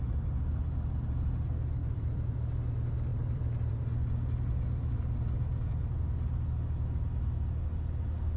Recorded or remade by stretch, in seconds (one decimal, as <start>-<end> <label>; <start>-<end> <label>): 0.0-1.8 recorded; 1.8-2.3 remade; 2.3-3.1 recorded; 3.1-4.1 remade; 4.1-8.4 recorded